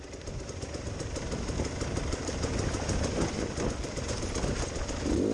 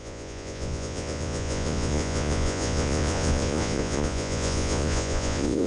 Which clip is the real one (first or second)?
first